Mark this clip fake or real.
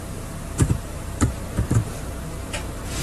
fake